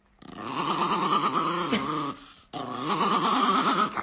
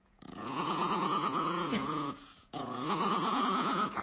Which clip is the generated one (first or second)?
second